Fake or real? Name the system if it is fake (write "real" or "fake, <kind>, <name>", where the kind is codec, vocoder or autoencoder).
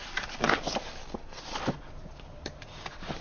real